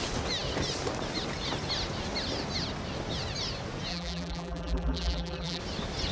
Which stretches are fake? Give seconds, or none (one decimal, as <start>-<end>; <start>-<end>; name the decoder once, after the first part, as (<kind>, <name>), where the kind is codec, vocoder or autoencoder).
3.9-5.6 (vocoder, BigVGAN v2)